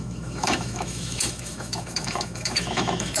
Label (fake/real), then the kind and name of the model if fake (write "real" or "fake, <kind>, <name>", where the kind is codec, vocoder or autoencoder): fake, autoencoder, DAC-VAE